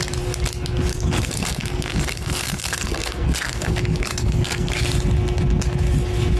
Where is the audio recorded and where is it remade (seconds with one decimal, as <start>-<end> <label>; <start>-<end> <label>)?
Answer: 0.0-0.9 recorded; 0.9-4.7 remade; 4.7-6.4 recorded